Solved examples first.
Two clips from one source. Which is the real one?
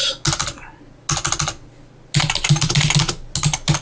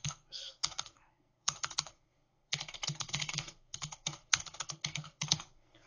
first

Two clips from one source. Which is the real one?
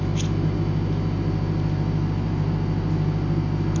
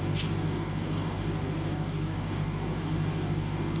first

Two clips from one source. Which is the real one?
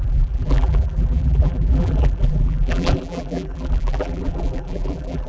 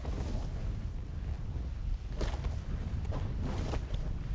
second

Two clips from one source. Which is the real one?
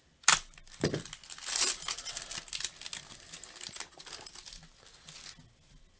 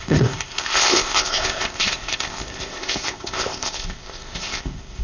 first